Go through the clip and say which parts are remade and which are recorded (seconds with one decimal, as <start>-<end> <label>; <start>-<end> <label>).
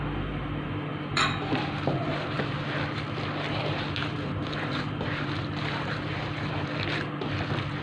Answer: 0.0-0.9 recorded; 0.9-2.4 remade; 2.4-4.0 recorded; 4.0-6.5 remade; 6.5-7.8 recorded